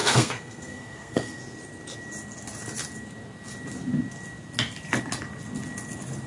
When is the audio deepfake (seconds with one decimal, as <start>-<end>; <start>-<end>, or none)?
0.0-1.4